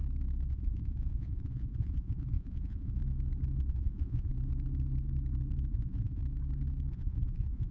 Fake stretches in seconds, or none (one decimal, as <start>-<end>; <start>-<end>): 0.5-3.0; 3.7-4.3; 5.7-6.2; 6.9-7.7